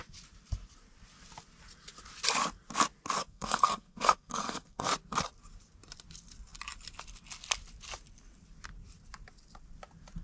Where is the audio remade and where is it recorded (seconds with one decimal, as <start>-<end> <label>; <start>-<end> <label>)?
0.0-3.2 recorded; 3.2-4.9 remade; 4.9-10.2 recorded

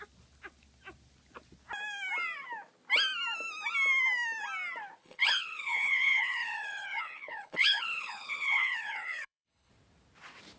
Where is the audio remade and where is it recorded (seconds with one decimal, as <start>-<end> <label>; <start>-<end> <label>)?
0.0-5.0 recorded; 5.0-9.7 remade; 9.7-10.6 recorded

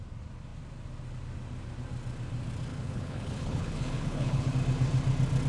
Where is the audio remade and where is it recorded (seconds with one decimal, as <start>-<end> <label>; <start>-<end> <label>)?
0.0-2.7 recorded; 2.7-4.5 remade; 4.5-5.5 recorded

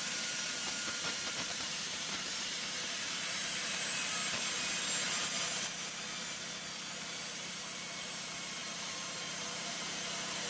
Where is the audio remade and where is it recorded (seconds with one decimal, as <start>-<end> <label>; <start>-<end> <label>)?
0.0-4.2 remade; 4.2-7.0 recorded; 7.0-10.5 remade

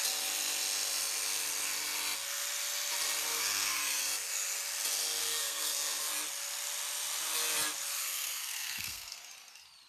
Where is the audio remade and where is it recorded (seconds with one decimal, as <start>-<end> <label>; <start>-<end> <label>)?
0.0-3.2 recorded; 3.2-4.0 remade; 4.0-5.2 recorded; 5.2-6.0 remade; 6.0-8.0 recorded; 8.0-9.2 remade; 9.2-9.9 recorded

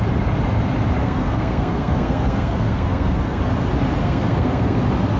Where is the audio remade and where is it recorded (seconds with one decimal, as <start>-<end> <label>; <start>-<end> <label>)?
0.0-1.0 recorded; 1.0-3.4 remade; 3.4-4.0 recorded; 4.0-4.8 remade; 4.8-5.2 recorded

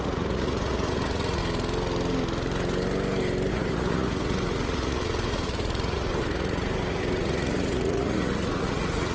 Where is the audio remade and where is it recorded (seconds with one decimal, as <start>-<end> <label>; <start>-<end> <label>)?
0.0-1.4 remade; 1.4-3.5 recorded; 3.5-9.1 remade